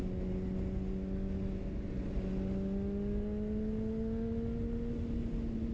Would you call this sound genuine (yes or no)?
yes